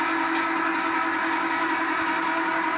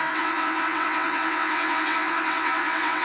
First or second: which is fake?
second